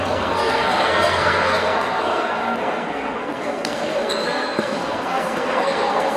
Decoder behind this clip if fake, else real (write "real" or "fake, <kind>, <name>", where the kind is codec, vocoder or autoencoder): fake, codec, SNAC